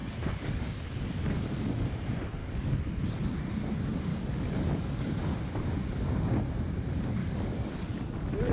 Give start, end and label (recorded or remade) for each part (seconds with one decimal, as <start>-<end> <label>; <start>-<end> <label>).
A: 0.0-1.9 remade; 1.9-2.4 recorded; 2.4-3.0 remade; 3.0-4.1 recorded; 4.1-5.2 remade; 5.2-7.2 recorded; 7.2-8.0 remade; 8.0-8.5 recorded